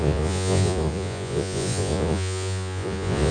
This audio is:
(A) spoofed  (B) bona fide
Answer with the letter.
A